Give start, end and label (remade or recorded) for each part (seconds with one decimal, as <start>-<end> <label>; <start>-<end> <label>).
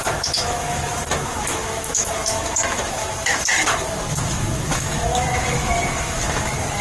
0.0-6.8 remade